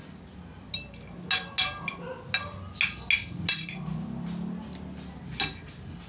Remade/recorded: recorded